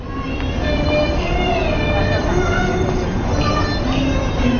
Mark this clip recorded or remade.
recorded